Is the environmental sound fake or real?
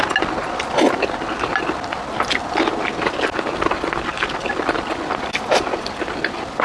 real